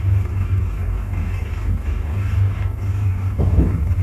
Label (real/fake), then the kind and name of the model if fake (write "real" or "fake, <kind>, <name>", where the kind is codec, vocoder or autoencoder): fake, codec, DAC